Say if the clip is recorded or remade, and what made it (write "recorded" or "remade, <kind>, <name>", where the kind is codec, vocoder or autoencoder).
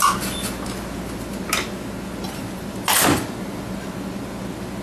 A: recorded